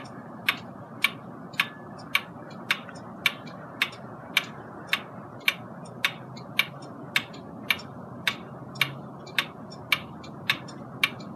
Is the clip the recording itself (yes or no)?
yes